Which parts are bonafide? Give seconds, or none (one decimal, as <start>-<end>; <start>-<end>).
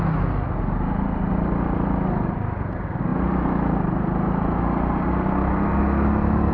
0.0-6.5